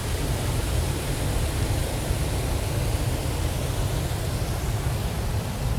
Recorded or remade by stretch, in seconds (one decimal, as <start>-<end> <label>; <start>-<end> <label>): 0.0-1.0 remade; 1.0-5.8 recorded